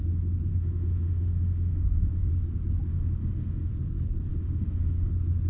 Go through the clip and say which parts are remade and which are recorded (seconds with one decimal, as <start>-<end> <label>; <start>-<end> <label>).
0.0-0.5 recorded; 0.5-2.3 remade; 2.3-2.9 recorded; 2.9-3.7 remade; 3.7-4.3 recorded; 4.3-5.1 remade; 5.1-5.5 recorded